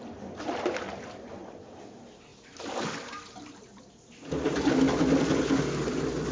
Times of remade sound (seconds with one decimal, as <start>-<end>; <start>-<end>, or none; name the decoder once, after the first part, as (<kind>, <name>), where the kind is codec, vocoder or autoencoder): none